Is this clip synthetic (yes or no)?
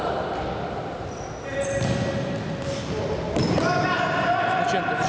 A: no